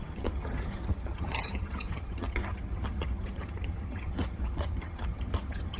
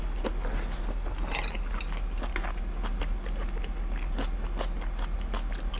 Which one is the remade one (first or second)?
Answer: first